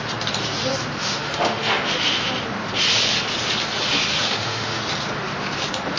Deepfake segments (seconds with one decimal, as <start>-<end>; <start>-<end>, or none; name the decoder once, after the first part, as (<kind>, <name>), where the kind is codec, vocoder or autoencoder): 1.0-1.8 (autoencoder, DAC-VAE); 4.1-4.8